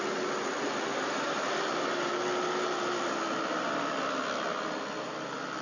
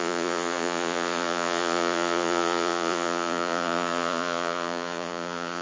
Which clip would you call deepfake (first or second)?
second